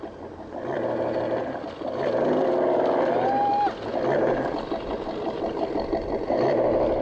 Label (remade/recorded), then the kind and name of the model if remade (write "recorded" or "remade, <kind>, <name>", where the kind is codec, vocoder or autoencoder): recorded